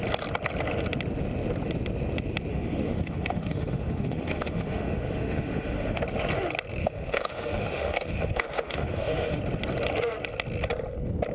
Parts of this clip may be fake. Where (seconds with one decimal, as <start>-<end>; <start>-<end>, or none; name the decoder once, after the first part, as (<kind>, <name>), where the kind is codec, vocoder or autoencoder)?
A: 2.5-6.0 (autoencoder, DAC-VAE); 6.8-9.4